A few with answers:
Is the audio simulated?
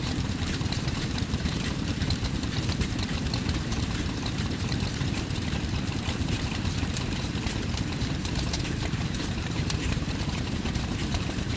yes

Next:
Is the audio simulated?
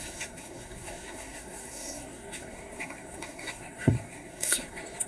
yes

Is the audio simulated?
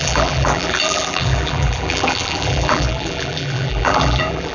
yes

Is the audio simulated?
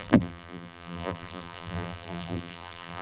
yes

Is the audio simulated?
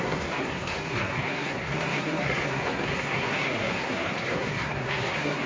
yes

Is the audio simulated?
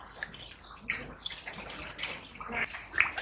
no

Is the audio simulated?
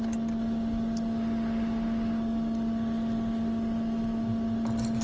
no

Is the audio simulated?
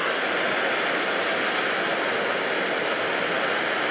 no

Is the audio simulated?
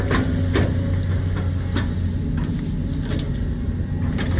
no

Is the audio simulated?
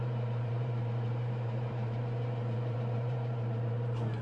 yes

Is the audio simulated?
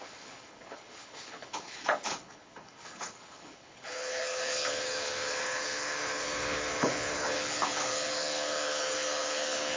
yes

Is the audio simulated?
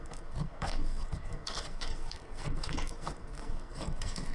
yes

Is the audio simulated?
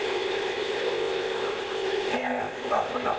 yes